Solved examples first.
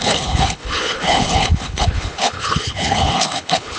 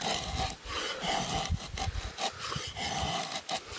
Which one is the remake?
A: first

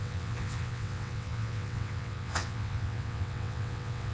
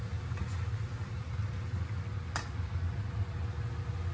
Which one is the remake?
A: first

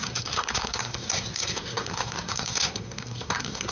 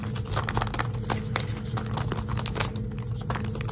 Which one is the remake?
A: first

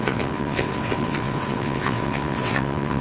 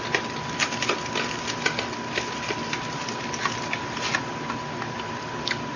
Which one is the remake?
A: first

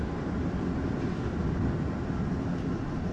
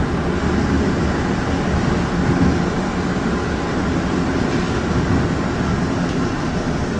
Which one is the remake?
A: first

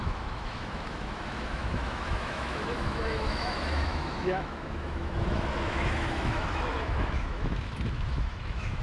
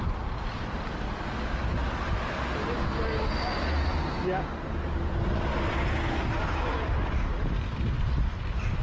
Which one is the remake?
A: first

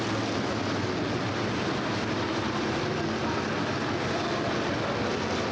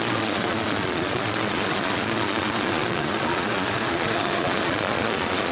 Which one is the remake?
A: second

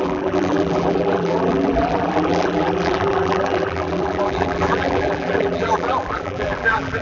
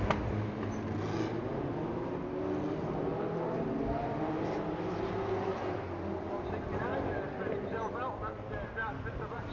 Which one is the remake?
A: first